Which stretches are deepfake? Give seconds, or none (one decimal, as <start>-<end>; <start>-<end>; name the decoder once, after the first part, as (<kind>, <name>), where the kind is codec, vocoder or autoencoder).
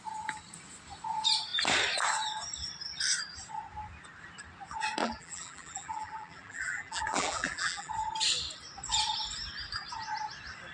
5.0-7.9 (vocoder, BigVGAN v2)